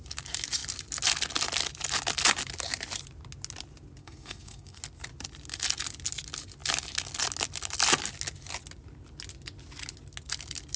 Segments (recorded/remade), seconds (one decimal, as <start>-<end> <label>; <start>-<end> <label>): 0.0-4.0 recorded; 4.0-4.8 remade; 4.8-10.8 recorded